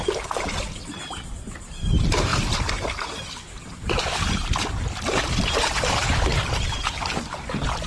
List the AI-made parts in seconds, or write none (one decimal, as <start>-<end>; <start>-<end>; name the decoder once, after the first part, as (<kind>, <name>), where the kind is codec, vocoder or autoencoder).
none